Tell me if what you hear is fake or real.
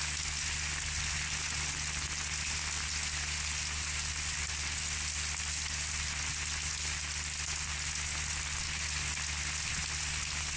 real